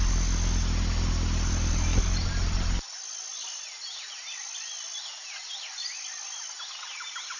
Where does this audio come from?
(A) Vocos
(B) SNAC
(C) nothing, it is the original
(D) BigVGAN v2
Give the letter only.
C